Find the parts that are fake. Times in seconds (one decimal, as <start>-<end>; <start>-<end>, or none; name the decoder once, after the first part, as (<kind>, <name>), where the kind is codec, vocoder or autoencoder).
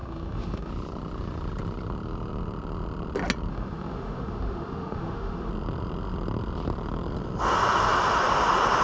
0.0-0.7 (autoencoder, DAC-VAE); 3.5-5.5